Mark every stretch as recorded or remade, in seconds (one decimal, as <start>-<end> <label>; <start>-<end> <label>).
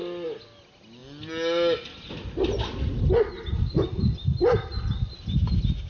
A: 0.0-5.9 recorded